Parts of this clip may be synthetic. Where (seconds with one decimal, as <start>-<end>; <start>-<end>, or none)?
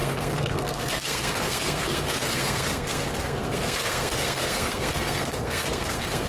0.0-6.3